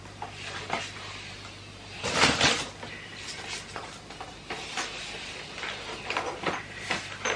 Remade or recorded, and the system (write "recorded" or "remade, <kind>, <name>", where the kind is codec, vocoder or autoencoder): recorded